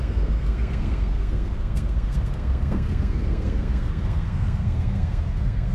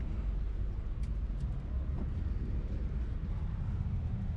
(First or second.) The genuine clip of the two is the second